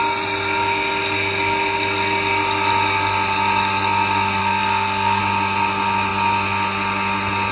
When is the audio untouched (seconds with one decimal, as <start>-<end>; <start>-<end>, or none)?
0.0-4.4; 5.2-7.5